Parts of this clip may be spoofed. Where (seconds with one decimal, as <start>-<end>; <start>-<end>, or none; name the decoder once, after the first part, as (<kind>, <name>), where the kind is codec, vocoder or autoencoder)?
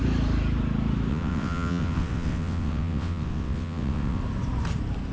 1.1-4.2 (vocoder, WaveNeXt)